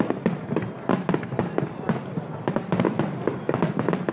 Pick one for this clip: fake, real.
real